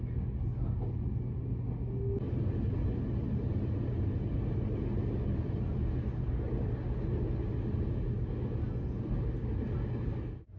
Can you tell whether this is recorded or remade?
recorded